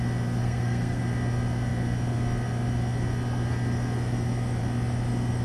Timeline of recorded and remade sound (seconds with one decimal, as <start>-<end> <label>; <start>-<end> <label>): 0.0-0.4 recorded; 0.4-1.0 remade; 1.0-5.4 recorded